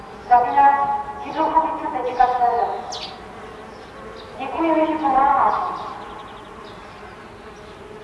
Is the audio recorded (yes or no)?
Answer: yes